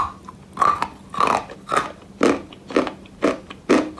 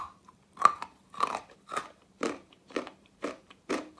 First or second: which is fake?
second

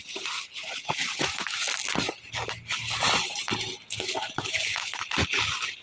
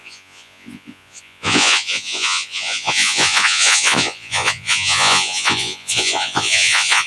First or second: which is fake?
second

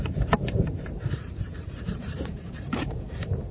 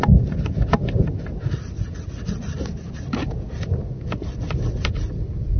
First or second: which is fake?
first